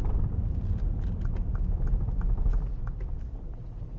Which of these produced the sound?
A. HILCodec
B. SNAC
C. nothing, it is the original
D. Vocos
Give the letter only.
C